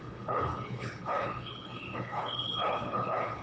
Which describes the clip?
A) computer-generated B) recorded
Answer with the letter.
A